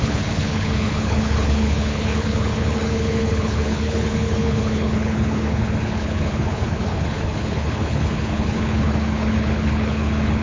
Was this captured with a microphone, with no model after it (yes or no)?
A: no